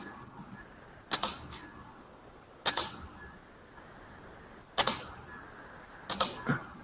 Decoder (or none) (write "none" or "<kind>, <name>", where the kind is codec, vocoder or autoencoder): none